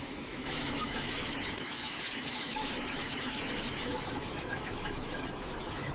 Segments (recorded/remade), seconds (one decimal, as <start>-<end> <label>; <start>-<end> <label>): 0.0-5.9 remade